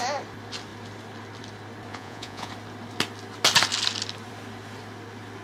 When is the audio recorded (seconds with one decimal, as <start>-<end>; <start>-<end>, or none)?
0.0-1.9; 2.5-5.4